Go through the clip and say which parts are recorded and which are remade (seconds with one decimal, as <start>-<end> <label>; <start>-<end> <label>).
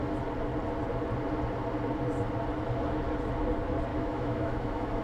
0.0-3.9 recorded; 3.9-5.0 remade